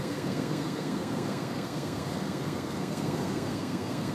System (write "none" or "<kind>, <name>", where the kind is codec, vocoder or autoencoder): codec, SNAC